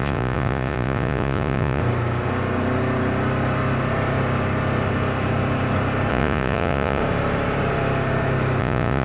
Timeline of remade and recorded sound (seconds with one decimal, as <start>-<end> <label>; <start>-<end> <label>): 0.0-1.8 remade; 1.8-6.1 recorded; 6.1-7.0 remade; 7.0-8.6 recorded; 8.6-9.0 remade